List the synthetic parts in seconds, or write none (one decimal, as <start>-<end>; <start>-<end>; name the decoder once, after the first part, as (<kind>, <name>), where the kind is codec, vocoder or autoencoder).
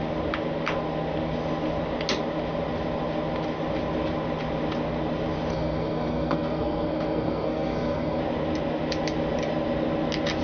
5.5-8.2 (codec, SNAC)